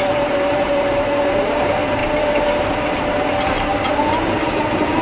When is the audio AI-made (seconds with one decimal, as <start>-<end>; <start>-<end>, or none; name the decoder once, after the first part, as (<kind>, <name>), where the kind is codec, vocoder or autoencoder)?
0.0-5.0 (vocoder, BigVGAN v2)